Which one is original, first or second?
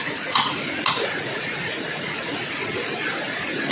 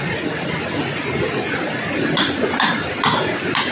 second